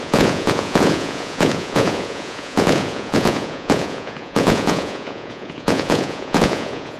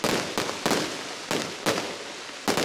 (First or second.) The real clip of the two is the second